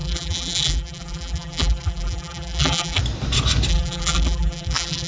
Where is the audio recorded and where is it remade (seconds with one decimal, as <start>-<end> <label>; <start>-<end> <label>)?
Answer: 0.0-3.0 remade; 3.0-3.7 recorded; 3.7-5.1 remade